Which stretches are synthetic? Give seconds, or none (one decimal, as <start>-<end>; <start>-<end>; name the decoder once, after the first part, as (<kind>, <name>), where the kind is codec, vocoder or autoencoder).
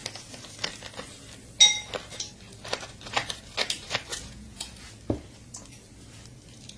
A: 4.1-4.9 (vocoder, Vocos)